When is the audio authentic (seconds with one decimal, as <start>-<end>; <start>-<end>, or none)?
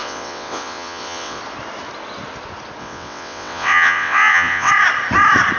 1.4-2.8; 4.7-5.6